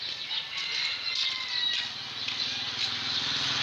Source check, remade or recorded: recorded